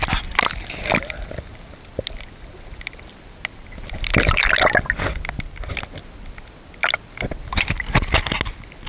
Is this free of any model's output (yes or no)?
yes